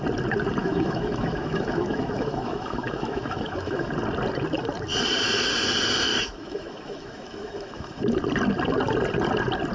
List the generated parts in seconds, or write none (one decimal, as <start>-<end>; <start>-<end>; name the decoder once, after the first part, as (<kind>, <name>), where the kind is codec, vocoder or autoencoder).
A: 0.6-3.9 (autoencoder, DAC-VAE); 6.1-8.0